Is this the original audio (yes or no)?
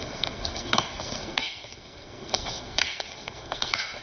no